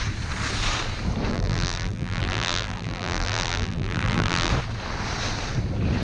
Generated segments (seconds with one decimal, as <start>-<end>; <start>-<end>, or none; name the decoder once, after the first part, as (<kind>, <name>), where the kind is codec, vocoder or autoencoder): 1.3-4.5 (vocoder, BigVGAN v2)